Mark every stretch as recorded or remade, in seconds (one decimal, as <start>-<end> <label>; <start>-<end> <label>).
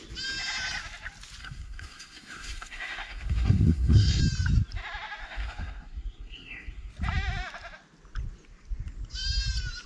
0.0-1.4 recorded; 1.4-4.2 remade; 4.2-5.2 recorded; 5.2-6.9 remade; 6.9-9.9 recorded